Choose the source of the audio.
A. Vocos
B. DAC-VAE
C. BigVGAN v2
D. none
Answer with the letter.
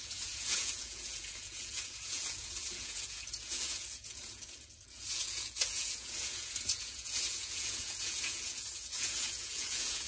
A